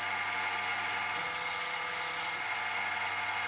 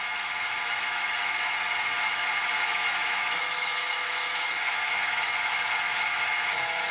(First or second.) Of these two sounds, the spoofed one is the second